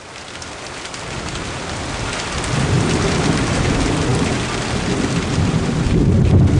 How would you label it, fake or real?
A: real